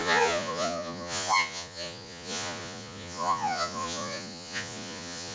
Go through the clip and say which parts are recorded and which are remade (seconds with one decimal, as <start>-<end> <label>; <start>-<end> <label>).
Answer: 0.0-5.3 remade